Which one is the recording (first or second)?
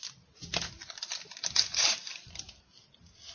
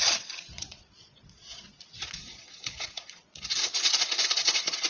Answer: first